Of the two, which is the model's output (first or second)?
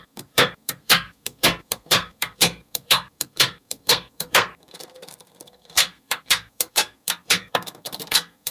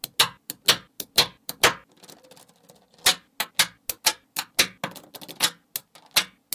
first